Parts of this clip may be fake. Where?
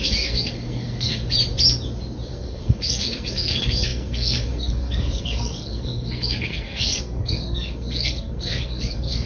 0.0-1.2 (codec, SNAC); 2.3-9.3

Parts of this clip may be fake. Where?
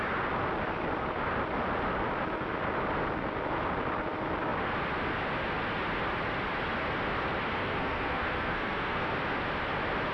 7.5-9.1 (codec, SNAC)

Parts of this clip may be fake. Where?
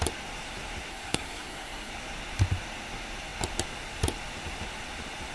0.9-1.9 (codec, SNAC)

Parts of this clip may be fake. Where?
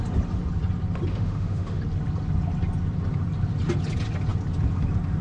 1.1-1.8 (autoencoder, DAC-VAE)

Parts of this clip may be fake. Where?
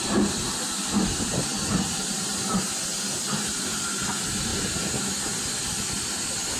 none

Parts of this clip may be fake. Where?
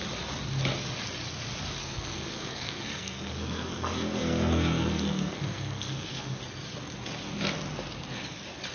1.8-6.4 (codec, SNAC)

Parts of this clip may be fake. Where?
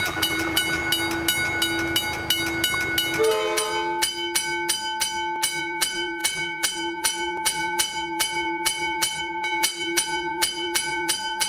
0.0-0.8 (vocoder, BigVGAN v2); 5.6-11.5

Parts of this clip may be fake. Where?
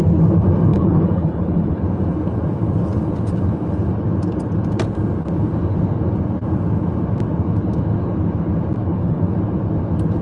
0.7-1.8 (codec, HILCodec); 8.8-9.3